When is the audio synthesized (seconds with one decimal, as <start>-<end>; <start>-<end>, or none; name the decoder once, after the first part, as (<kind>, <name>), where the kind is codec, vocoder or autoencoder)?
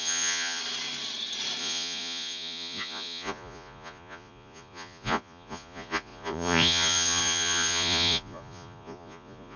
0.0-0.6 (vocoder, Vocos); 1.6-9.6